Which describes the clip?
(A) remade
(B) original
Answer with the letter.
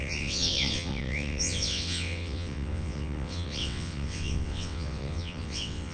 A